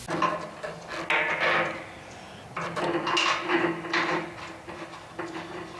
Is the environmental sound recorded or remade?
recorded